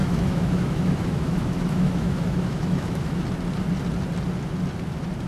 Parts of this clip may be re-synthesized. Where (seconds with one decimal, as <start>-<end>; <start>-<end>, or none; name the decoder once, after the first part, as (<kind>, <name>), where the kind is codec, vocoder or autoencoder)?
0.0-3.2 (autoencoder, DAC-VAE)